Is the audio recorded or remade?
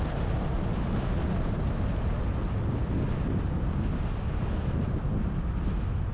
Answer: recorded